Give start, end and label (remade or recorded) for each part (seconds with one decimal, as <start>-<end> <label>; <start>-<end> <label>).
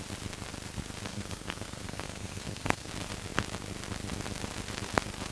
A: 0.0-1.1 recorded; 1.1-2.9 remade; 2.9-5.3 recorded